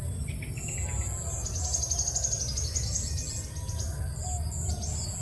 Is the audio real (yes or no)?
yes